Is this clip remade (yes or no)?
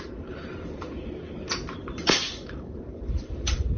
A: yes